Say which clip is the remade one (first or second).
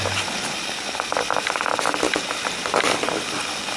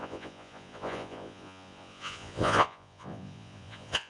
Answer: second